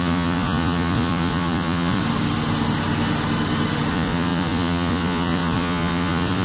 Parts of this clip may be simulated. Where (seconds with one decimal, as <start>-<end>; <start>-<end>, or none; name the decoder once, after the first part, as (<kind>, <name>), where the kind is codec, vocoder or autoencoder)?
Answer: 0.0-2.0 (vocoder, Vocos); 3.9-6.4